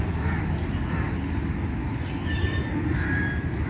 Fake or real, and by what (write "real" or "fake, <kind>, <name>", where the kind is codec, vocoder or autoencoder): real